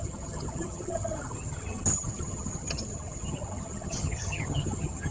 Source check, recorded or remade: remade